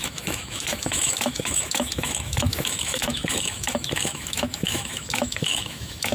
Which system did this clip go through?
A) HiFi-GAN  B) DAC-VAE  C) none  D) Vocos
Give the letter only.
B